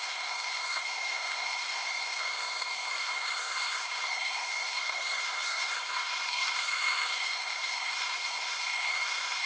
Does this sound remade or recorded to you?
remade